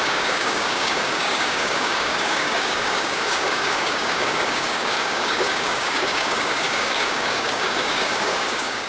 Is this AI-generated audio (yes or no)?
yes